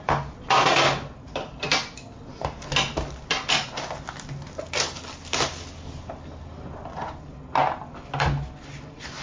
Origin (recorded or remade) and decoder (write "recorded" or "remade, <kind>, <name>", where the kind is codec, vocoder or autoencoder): recorded